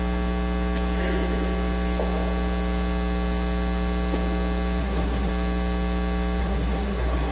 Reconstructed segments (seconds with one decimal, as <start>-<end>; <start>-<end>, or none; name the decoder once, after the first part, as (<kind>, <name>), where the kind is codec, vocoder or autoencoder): 4.8-5.3 (codec, SNAC); 6.4-7.3